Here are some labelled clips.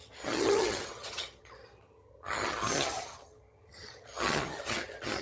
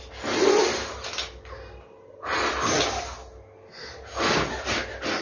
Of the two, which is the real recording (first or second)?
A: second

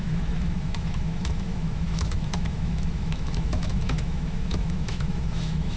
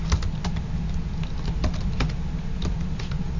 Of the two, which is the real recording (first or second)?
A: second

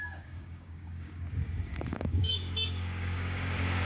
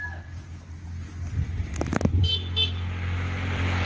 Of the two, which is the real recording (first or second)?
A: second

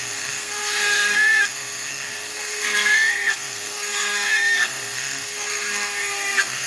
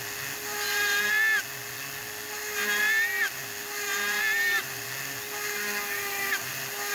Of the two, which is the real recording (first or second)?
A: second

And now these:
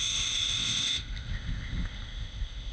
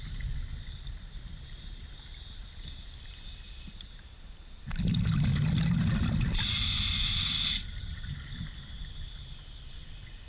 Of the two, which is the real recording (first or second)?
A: second